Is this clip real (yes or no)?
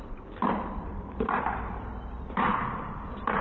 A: no